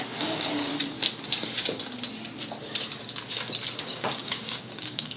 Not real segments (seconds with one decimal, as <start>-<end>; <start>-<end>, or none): 0.0-0.7; 3.8-5.2